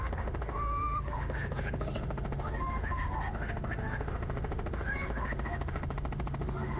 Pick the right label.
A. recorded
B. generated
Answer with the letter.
B